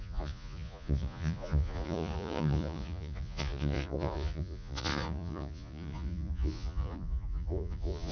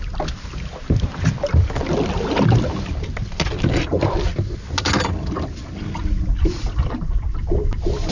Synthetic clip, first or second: first